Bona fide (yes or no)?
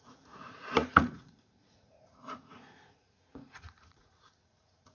no